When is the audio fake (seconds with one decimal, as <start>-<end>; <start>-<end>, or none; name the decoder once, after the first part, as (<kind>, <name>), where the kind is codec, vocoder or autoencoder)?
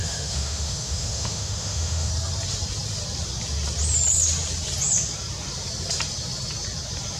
0.0-2.1 (autoencoder, DAC-VAE)